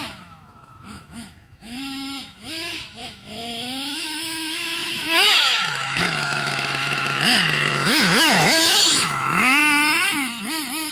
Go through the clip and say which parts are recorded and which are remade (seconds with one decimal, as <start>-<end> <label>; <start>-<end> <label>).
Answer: 0.0-9.6 remade; 9.6-10.9 recorded

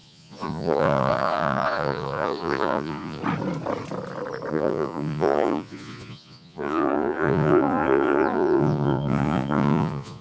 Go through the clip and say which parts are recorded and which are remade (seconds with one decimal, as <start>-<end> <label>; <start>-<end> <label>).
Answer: 0.0-3.2 remade; 3.2-4.5 recorded; 4.5-10.2 remade